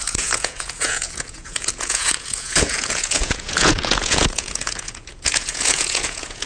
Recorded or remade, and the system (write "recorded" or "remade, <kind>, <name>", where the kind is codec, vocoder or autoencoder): remade, vocoder, Vocos